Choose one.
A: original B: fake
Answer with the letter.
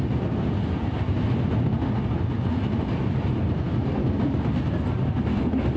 A